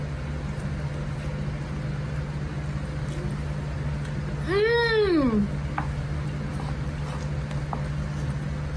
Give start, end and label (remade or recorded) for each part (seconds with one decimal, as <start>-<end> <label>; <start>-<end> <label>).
0.0-8.8 recorded